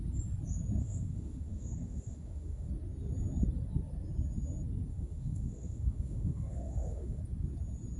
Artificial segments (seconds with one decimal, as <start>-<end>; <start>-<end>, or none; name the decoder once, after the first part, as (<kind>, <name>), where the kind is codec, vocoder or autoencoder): 0.8-2.7 (autoencoder, DAC-VAE); 4.9-7.2